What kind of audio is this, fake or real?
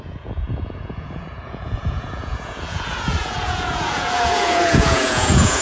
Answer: fake